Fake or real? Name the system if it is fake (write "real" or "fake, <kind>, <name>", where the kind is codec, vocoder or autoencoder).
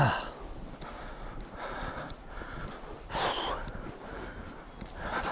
real